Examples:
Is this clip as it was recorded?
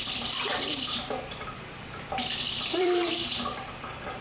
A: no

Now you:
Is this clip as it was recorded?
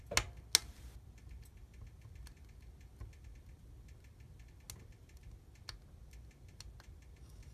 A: yes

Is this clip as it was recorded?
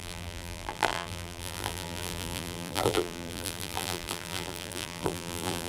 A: no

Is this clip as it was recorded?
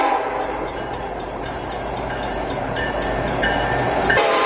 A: no